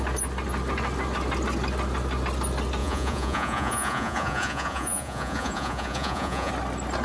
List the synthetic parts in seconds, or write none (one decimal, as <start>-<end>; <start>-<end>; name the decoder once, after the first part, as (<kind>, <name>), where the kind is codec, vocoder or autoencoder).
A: 2.8-6.5 (vocoder, Vocos)